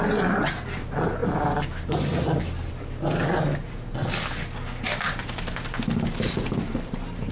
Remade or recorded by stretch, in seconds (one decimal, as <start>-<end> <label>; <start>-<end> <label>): 0.0-1.2 recorded; 1.2-2.7 remade; 2.7-7.3 recorded